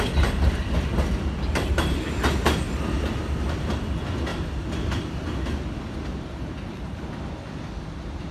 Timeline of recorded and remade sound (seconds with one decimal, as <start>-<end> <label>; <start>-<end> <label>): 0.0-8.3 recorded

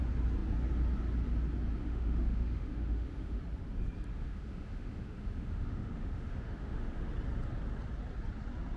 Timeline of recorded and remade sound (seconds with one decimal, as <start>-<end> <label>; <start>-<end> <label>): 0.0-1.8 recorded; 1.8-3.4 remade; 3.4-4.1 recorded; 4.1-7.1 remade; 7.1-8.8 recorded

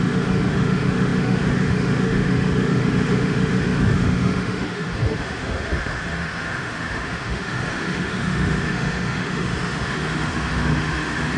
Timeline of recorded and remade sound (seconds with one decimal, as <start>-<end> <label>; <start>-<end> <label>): 0.0-11.4 remade